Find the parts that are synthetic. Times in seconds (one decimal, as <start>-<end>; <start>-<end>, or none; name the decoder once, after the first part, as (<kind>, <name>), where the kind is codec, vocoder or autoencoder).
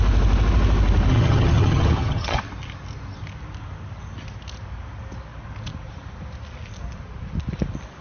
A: 1.1-2.4 (vocoder, HiFi-GAN)